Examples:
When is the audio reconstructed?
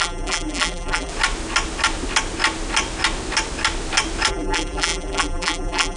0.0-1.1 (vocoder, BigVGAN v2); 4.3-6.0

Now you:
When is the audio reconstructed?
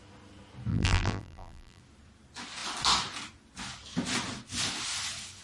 0.7-1.8 (vocoder, BigVGAN v2)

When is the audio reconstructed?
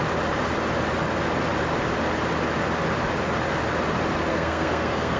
4.3-5.2 (codec, SNAC)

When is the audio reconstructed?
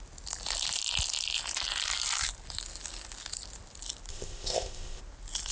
4.1-5.0 (codec, ZipCodec)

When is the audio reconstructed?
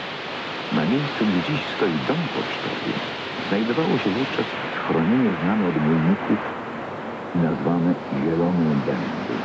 none